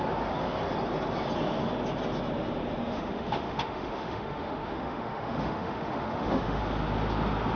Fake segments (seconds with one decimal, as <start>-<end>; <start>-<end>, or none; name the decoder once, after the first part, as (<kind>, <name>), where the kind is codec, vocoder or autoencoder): 2.8-6.6 (autoencoder, DAC-VAE)